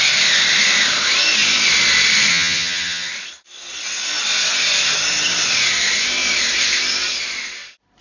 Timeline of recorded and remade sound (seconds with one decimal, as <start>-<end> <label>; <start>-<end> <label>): 0.0-2.3 recorded; 2.3-3.1 remade; 3.1-8.0 recorded